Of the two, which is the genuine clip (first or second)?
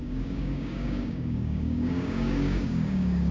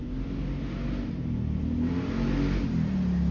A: second